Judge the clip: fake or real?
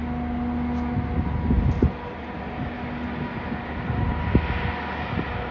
real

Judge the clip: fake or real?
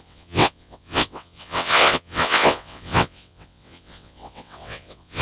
fake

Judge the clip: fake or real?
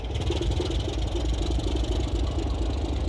real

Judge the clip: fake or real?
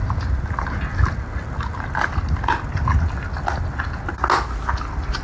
real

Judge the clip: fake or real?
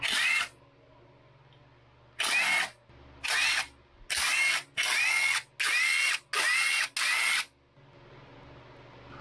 real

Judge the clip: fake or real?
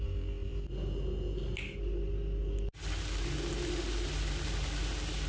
real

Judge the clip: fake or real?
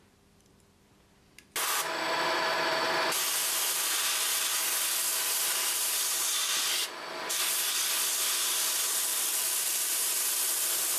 real